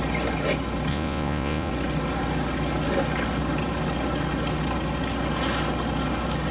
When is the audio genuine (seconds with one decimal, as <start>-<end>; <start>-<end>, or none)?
0.0-0.9; 1.7-6.5